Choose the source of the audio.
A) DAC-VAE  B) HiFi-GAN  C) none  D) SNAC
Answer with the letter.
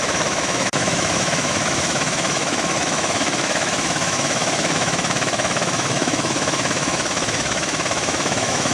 A